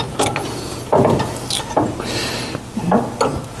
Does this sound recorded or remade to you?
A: recorded